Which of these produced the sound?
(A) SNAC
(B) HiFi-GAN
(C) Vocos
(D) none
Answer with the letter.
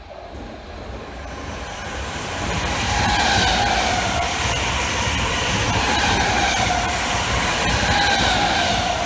D